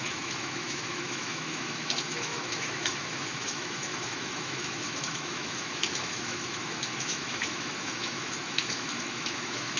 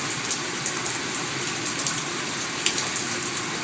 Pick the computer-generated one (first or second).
first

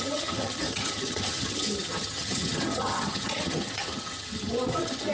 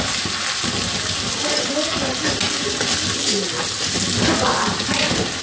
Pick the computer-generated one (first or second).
first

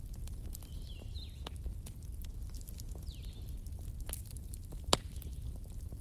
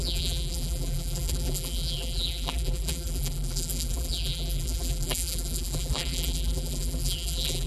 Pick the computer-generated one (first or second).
second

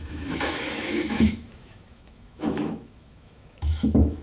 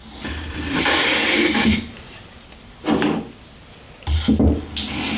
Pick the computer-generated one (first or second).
first